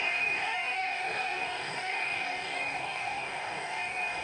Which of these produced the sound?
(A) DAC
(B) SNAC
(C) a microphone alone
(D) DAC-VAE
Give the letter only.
A